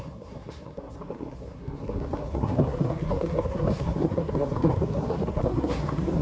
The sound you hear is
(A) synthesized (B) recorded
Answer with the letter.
A